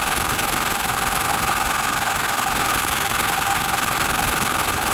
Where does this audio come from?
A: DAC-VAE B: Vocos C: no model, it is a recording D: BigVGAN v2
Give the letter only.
A